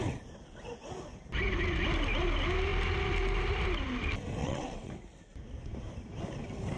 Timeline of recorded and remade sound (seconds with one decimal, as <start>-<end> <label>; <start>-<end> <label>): 0.0-4.4 recorded; 4.4-4.9 remade; 4.9-6.8 recorded